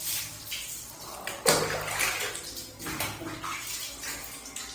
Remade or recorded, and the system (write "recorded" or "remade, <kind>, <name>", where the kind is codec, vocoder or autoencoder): recorded